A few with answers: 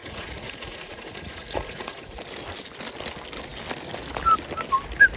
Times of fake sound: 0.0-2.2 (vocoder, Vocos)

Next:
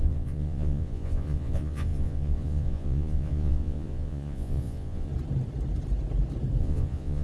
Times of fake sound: 0.0-5.1 (vocoder, Vocos); 6.6-7.2

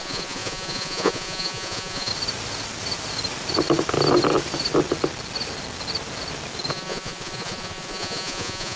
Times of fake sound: 0.0-2.1 (vocoder, Vocos); 6.7-8.8

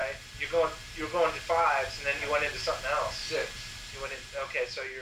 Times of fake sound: none

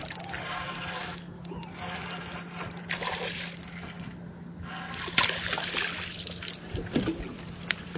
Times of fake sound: none

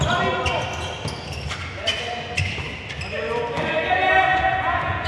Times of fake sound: 4.3-5.1 (vocoder, Vocos)